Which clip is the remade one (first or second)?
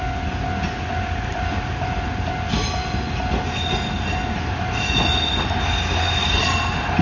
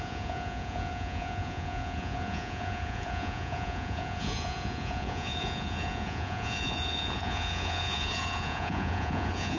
second